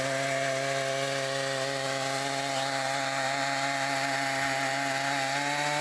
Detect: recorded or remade recorded